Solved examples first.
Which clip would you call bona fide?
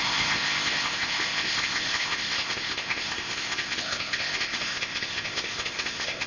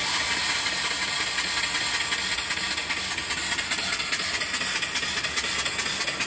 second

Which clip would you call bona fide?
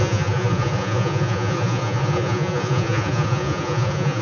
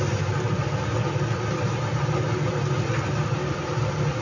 second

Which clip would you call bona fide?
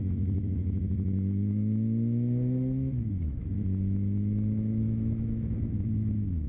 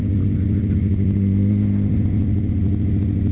second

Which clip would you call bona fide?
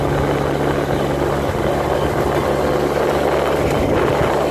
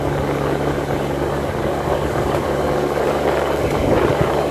first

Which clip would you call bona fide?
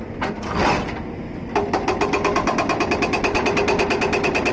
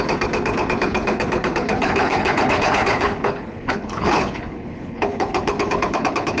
first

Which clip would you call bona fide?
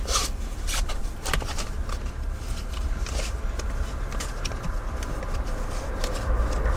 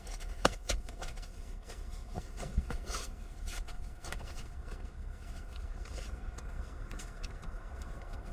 first